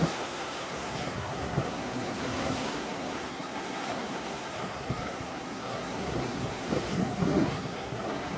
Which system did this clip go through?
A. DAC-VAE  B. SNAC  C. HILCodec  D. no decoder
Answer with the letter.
B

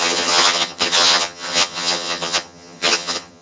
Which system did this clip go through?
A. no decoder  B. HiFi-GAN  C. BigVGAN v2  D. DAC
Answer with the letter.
B